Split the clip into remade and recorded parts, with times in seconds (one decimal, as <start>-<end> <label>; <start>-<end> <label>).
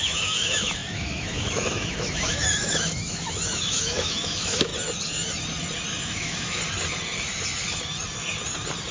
0.0-4.7 remade; 4.7-6.0 recorded; 6.0-6.6 remade; 6.6-8.9 recorded